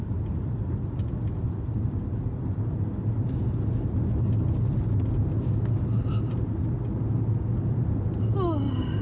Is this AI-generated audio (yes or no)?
no